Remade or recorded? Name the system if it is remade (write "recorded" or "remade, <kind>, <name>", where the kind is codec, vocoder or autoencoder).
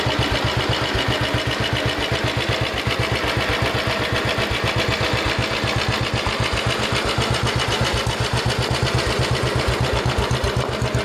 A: recorded